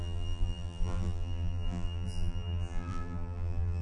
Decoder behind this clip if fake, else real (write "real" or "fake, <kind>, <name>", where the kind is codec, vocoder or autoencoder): fake, vocoder, BigVGAN v2